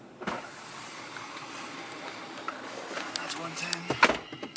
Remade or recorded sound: recorded